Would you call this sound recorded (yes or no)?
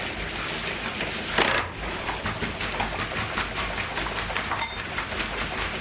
yes